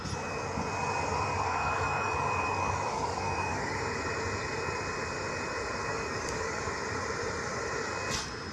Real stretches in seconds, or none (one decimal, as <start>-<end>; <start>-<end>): 0.0-1.3; 3.6-5.9; 6.6-8.5

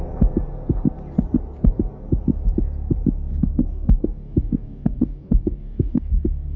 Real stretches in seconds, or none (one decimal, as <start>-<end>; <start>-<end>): 0.0-3.3

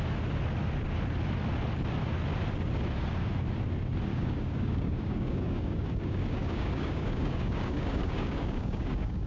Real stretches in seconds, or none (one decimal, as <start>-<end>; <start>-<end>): 0.0-4.1

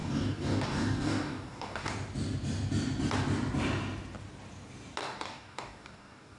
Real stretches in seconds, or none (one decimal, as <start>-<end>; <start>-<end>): 1.9-5.0

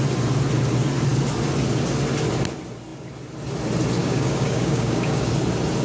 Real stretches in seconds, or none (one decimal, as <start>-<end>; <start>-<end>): 0.0-4.0; 5.3-5.8